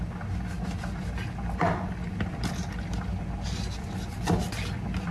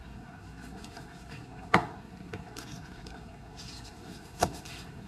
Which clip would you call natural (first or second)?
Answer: first